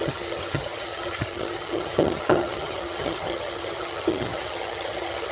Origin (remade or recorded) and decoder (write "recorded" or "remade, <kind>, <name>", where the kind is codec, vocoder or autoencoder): remade, vocoder, HiFi-GAN